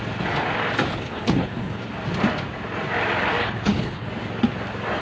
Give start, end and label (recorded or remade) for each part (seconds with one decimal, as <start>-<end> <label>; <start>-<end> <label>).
0.0-0.9 recorded; 0.9-1.8 remade; 1.8-3.4 recorded; 3.4-4.1 remade; 4.1-5.0 recorded

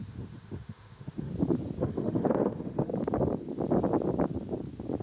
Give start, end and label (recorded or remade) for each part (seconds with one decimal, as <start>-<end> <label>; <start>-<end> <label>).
0.0-1.3 remade; 1.3-1.8 recorded; 1.8-2.9 remade; 2.9-5.0 recorded

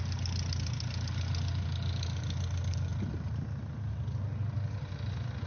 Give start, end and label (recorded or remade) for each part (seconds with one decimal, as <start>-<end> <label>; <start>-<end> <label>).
0.0-5.5 recorded

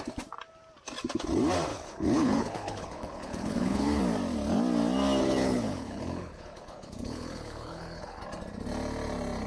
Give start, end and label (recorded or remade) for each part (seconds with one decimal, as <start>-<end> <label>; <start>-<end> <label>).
0.0-1.7 recorded; 1.7-4.0 remade; 4.0-5.2 recorded; 5.2-8.2 remade; 8.2-9.5 recorded

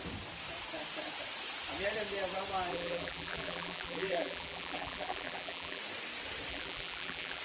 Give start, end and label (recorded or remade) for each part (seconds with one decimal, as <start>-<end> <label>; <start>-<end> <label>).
0.0-2.7 recorded; 2.7-5.8 remade; 5.8-6.5 recorded; 6.5-7.4 remade

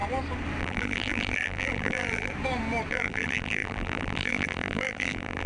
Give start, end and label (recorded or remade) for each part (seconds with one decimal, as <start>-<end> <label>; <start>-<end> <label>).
0.0-0.6 recorded; 0.6-2.3 remade; 2.3-2.9 recorded; 2.9-5.5 remade